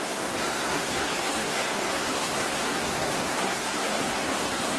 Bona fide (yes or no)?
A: no